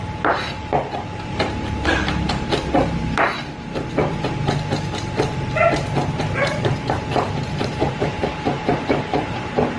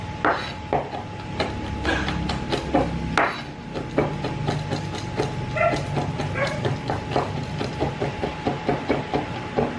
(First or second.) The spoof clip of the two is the first